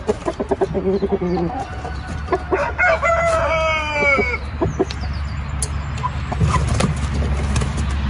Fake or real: real